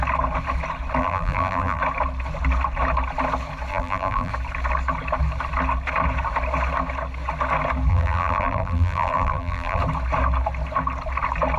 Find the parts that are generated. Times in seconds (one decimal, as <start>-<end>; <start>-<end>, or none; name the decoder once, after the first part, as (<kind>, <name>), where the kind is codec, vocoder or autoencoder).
1.0-1.8 (vocoder, BigVGAN v2); 3.7-4.3; 7.9-9.8